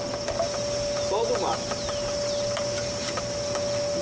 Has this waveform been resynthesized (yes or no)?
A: no